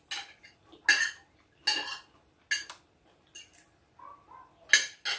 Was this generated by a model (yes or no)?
no